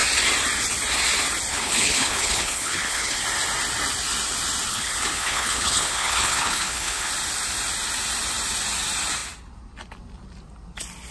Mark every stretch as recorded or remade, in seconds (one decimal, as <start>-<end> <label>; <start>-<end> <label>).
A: 0.0-1.5 recorded; 1.5-3.2 remade; 3.2-4.7 recorded; 4.7-7.1 remade; 7.1-11.1 recorded